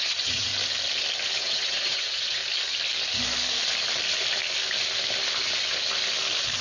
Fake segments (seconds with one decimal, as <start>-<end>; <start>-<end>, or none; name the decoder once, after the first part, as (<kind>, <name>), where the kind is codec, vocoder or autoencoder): 0.0-0.5 (vocoder, WaveNeXt); 1.4-2.4